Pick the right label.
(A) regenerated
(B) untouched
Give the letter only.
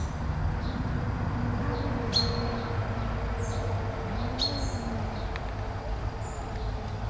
B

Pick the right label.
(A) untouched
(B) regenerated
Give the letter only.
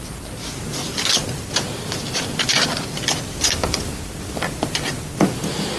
A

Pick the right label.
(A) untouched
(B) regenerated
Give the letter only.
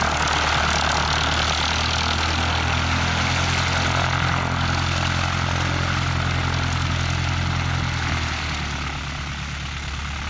A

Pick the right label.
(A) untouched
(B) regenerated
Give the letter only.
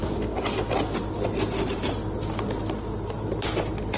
A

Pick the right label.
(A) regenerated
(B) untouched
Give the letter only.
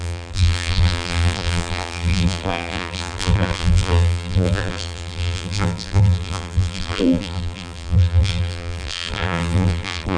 A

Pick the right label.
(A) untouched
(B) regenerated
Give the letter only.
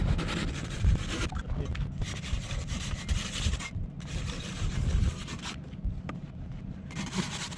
A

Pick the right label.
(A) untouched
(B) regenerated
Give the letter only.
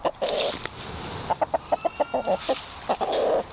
A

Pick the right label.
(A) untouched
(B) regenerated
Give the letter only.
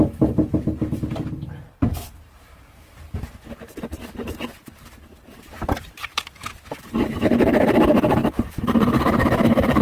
B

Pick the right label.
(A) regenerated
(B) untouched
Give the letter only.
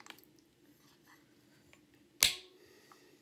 B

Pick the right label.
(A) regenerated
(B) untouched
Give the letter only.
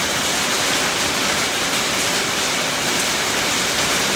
B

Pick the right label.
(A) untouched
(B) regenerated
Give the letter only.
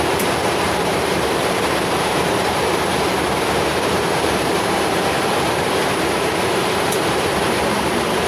B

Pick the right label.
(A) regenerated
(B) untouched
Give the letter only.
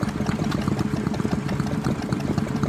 A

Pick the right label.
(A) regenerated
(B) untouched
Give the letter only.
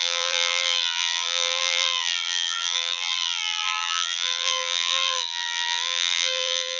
A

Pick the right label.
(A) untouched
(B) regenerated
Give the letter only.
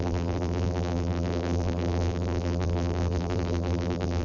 B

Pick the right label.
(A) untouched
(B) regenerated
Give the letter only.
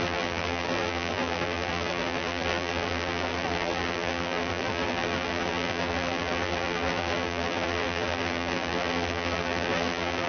B